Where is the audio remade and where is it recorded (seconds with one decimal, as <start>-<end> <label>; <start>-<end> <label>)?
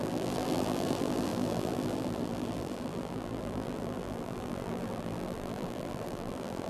0.0-6.7 remade